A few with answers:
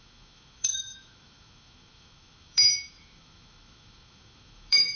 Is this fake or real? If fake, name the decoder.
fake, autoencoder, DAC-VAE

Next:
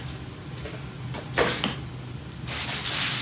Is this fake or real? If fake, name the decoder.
real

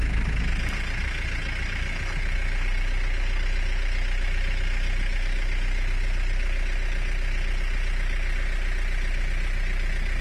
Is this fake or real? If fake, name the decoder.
real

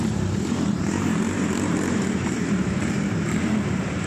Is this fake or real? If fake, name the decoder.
fake, vocoder, BigVGAN v2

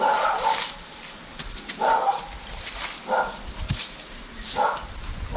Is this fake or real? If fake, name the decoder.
fake, vocoder, BigVGAN v2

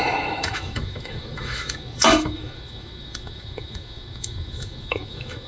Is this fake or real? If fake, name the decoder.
fake, autoencoder, DAC-VAE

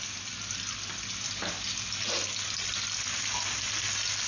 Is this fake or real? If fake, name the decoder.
real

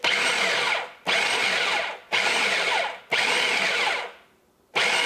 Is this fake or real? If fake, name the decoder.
real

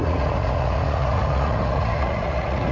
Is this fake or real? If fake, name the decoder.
fake, vocoder, Vocos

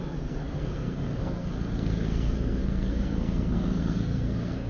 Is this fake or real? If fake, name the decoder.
fake, codec, SNAC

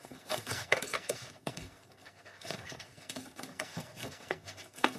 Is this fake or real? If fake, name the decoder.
fake, codec, SNAC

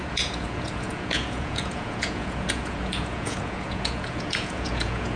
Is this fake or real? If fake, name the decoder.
fake, vocoder, Vocos